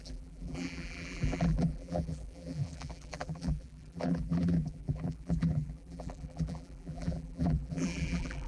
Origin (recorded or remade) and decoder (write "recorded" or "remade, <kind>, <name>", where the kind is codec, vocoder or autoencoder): remade, vocoder, BigVGAN v2